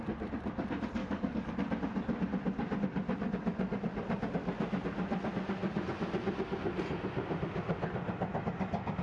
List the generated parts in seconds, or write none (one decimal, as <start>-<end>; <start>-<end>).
1.0-1.5